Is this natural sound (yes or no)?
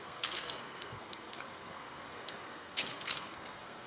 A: no